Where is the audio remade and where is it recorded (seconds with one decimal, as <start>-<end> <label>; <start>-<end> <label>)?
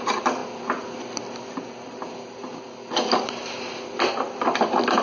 0.0-5.0 recorded